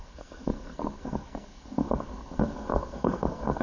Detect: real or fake fake